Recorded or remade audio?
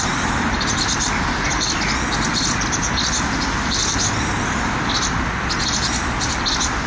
recorded